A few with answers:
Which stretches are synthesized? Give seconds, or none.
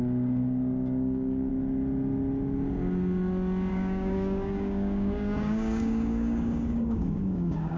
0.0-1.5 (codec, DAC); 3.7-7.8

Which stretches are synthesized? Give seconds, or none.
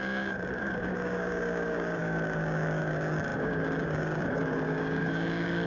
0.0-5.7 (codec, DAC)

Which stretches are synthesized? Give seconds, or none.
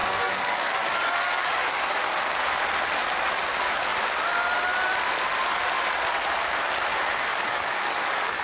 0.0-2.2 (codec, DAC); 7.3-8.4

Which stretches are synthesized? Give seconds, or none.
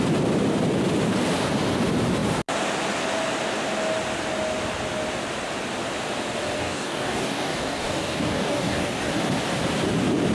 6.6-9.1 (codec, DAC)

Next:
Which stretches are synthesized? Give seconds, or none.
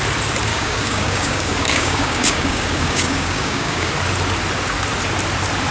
0.5-3.9 (codec, DAC)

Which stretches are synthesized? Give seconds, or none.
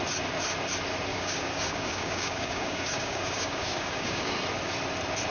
1.1-4.3 (codec, DAC)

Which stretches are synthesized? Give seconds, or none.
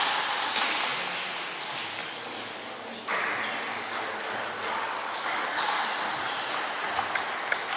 2.0-2.8 (codec, DAC); 3.7-5.8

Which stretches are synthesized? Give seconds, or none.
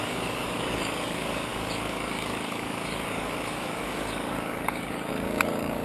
0.0-5.8 (codec, DAC)